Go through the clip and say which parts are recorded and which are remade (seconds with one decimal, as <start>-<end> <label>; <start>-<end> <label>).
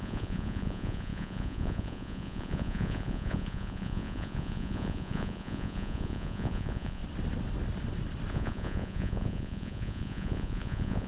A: 0.0-7.0 remade; 7.0-8.3 recorded; 8.3-11.1 remade